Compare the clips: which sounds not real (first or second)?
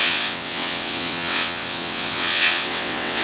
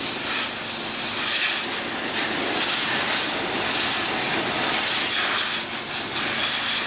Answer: first